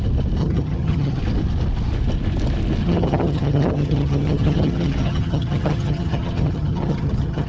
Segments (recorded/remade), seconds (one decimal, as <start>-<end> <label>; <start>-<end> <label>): 0.0-0.4 recorded; 0.4-1.2 remade; 1.2-2.8 recorded; 2.8-7.5 remade